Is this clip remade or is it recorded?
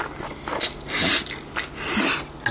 recorded